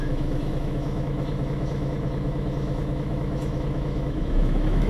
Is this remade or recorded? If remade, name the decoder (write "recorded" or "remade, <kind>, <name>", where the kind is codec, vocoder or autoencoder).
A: remade, autoencoder, DAC-VAE